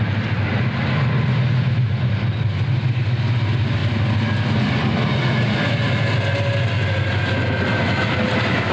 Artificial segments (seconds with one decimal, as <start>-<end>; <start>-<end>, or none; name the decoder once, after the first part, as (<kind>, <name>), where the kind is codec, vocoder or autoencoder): none